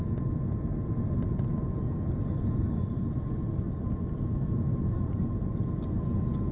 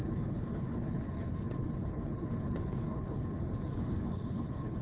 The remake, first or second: second